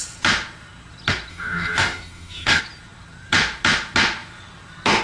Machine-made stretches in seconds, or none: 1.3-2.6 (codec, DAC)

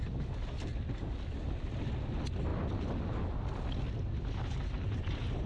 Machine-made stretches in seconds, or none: none

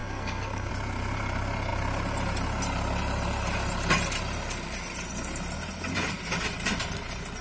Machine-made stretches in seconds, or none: 0.0-0.7 (codec, SNAC)

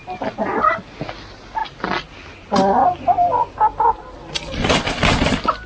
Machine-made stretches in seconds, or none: none

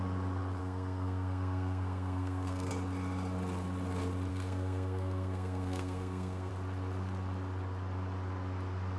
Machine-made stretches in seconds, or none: 0.6-2.7 (codec, SNAC); 4.3-6.5